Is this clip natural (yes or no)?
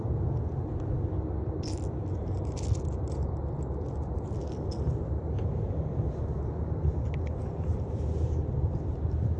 yes